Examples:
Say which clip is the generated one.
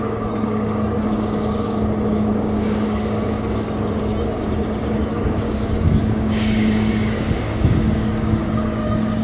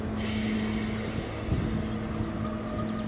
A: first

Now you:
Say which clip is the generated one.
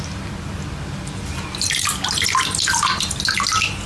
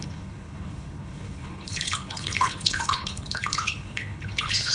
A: second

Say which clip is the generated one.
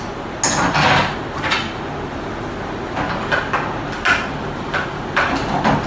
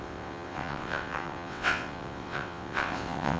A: second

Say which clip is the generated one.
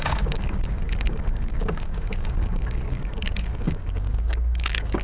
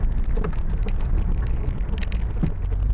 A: first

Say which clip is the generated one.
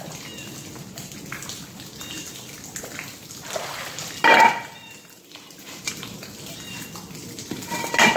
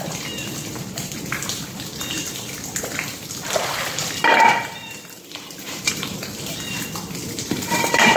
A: second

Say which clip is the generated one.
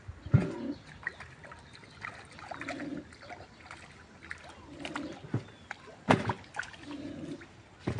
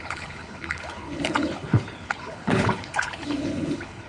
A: second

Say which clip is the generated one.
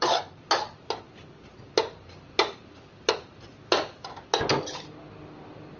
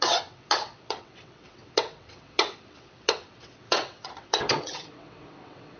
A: second